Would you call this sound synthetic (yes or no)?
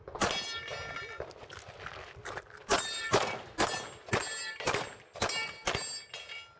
no